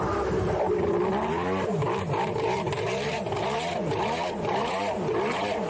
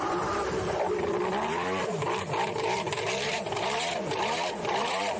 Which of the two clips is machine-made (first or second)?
second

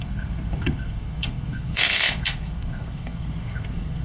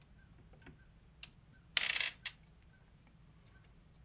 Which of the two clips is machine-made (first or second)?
first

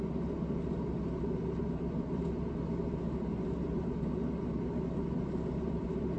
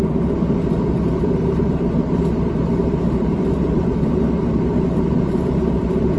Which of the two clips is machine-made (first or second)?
second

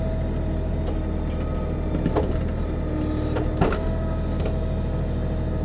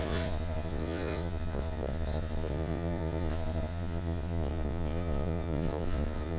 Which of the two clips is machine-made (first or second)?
second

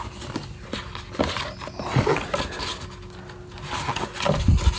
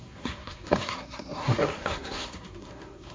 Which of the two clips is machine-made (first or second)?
second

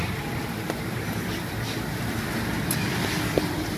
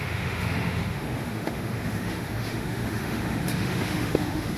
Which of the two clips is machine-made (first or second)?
second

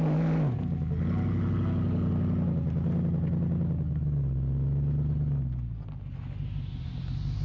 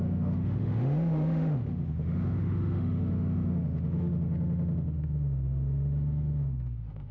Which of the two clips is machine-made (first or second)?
second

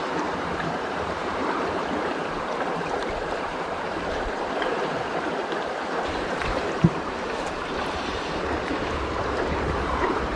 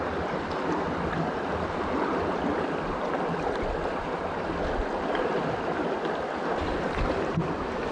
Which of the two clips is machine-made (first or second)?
first